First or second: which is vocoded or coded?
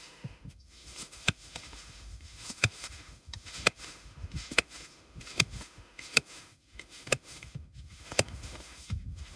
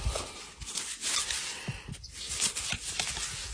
first